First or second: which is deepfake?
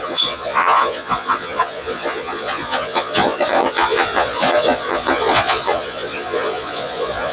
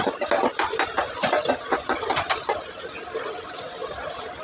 first